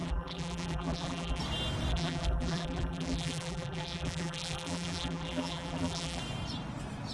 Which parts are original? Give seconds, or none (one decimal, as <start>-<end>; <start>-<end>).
1.4-1.9; 6.2-7.1